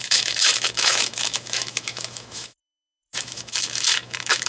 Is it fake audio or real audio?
fake